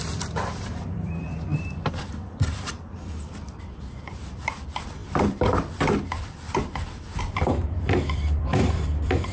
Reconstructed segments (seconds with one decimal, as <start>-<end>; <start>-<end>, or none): 0.0-9.3